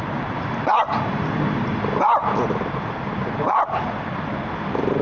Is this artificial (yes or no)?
no